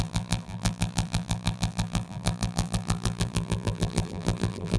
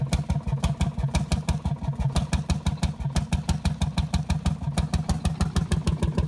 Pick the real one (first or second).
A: second